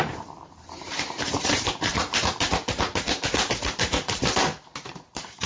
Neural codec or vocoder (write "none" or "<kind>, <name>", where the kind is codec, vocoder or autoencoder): vocoder, BigVGAN v2